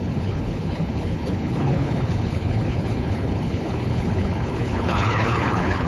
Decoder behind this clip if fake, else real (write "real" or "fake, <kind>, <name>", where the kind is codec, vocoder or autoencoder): fake, codec, HILCodec